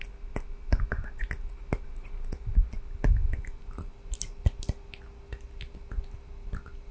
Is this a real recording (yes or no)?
yes